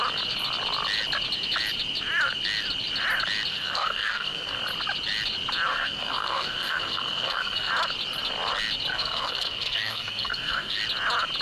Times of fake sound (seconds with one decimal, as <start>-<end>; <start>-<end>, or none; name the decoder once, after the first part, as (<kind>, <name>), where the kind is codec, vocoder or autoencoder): 3.5-4.6 (codec, SNAC); 5.7-7.7; 8.9-10.8